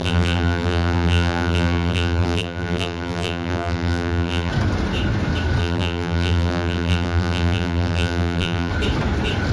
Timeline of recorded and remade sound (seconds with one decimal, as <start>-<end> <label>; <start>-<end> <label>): 0.0-4.5 remade; 4.5-5.6 recorded; 5.6-8.7 remade; 8.7-9.5 recorded